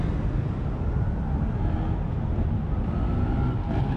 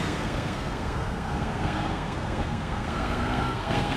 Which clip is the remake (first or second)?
second